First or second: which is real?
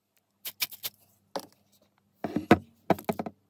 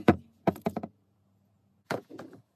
first